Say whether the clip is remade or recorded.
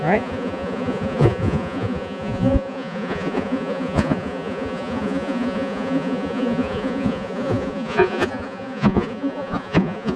remade